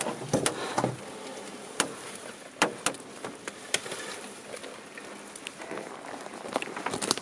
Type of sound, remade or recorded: recorded